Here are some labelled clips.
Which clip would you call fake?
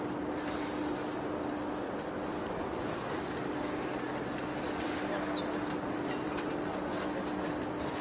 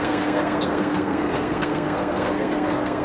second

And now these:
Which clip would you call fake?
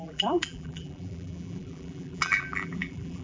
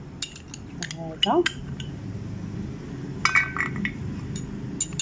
first